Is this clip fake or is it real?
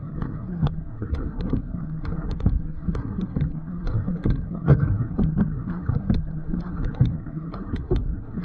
fake